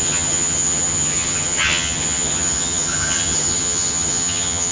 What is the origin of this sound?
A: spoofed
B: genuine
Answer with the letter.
A